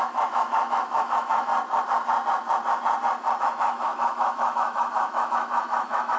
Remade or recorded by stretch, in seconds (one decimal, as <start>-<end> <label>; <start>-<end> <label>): 0.0-1.5 remade; 1.5-3.4 recorded; 3.4-6.2 remade